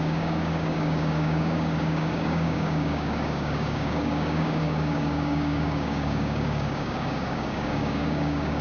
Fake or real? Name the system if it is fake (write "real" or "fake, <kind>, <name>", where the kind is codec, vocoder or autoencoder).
fake, codec, DAC